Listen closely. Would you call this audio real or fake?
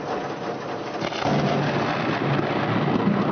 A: real